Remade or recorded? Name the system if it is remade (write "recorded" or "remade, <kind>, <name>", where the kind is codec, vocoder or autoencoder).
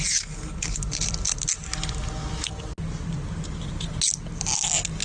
recorded